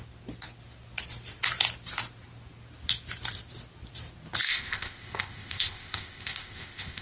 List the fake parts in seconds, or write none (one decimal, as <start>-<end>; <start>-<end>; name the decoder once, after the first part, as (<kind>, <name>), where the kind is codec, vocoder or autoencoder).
4.4-7.0 (codec, ZipCodec)